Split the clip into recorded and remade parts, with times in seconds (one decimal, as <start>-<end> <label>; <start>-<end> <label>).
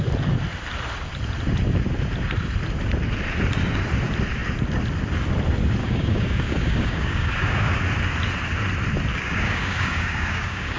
0.0-5.8 recorded; 5.8-7.8 remade; 7.8-9.1 recorded; 9.1-10.8 remade